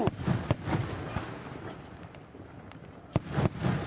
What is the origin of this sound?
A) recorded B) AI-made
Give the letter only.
A